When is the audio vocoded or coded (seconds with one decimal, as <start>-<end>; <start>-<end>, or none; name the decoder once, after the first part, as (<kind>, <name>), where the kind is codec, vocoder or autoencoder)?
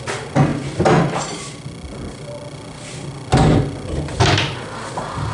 none